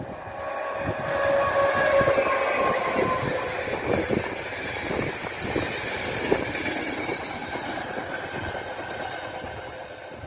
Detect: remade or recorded recorded